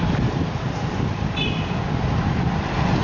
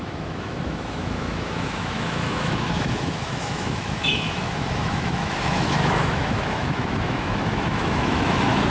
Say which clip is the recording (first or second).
first